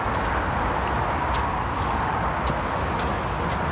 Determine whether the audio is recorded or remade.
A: recorded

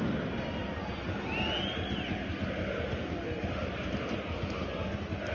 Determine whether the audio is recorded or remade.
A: recorded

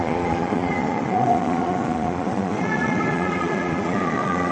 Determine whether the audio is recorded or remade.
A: remade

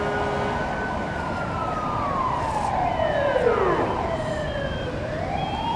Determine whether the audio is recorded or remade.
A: recorded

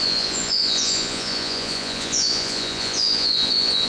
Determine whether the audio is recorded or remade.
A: remade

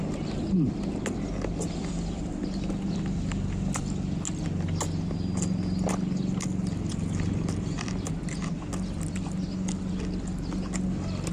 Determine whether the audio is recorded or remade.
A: recorded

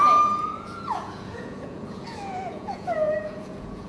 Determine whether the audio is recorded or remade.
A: remade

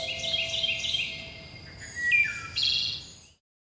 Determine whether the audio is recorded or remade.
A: recorded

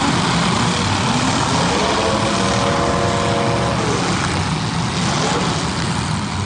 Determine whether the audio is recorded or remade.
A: recorded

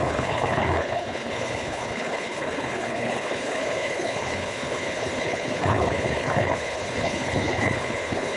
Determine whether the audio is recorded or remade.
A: remade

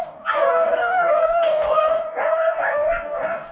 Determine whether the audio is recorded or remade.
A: remade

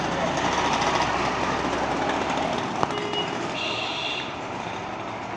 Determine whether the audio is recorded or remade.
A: recorded